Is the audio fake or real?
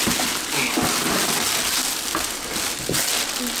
real